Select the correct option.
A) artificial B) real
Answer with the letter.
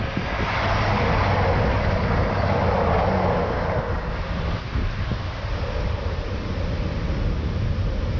B